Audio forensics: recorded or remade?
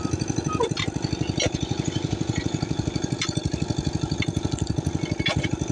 remade